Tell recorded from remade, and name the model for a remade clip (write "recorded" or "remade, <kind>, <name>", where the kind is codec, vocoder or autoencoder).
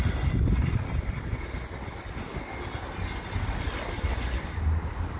recorded